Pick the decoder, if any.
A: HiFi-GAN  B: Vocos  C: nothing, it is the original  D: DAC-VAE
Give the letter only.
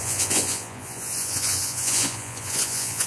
B